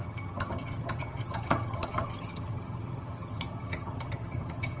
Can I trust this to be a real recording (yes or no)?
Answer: no